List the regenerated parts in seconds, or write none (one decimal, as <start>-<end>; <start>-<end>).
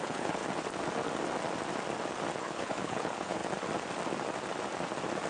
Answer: 0.0-0.4; 2.4-3.4